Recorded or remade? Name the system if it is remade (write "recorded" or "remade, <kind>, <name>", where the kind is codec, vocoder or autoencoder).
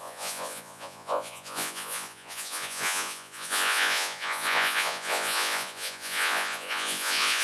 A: remade, vocoder, Vocos